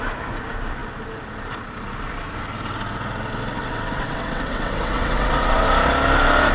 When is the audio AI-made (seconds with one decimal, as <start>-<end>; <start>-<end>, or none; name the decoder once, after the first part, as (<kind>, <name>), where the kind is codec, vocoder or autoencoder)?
3.6-5.7 (vocoder, WaveNeXt)